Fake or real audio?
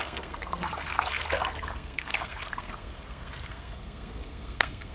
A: fake